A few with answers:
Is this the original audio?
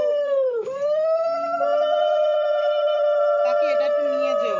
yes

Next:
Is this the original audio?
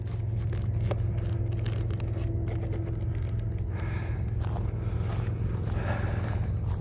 yes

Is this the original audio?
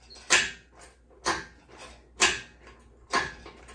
yes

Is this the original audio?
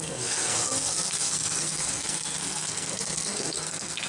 no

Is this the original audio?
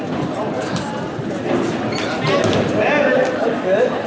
yes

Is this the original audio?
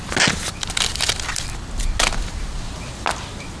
yes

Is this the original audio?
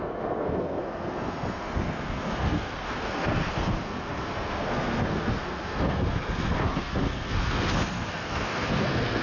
no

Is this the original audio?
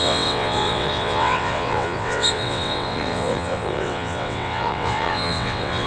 no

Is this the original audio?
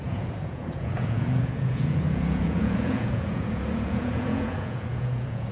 no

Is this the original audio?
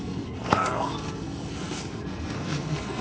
no